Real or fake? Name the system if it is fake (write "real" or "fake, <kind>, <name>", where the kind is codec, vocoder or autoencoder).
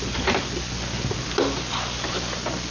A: real